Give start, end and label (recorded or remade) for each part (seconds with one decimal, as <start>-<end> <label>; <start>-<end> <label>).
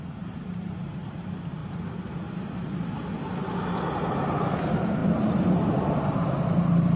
0.0-7.0 remade